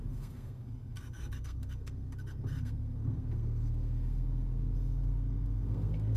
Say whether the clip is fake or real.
fake